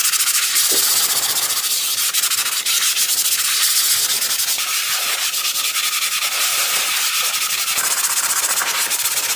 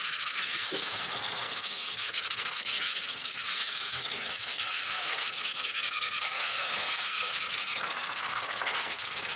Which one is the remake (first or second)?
second